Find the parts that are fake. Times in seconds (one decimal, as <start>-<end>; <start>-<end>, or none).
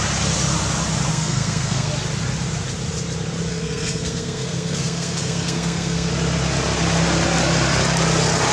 1.1-1.9; 3.5-6.1